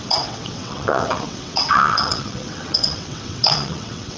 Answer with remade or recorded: remade